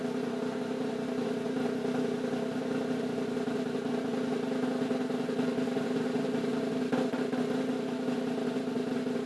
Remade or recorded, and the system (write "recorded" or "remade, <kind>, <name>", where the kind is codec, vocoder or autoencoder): recorded